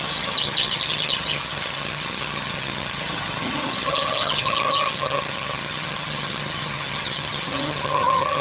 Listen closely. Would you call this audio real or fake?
fake